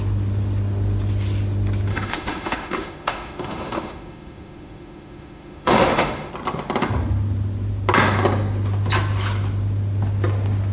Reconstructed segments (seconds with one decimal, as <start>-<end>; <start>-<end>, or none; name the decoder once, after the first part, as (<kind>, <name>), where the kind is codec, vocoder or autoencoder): 1.9-6.3 (autoencoder, DAC-VAE)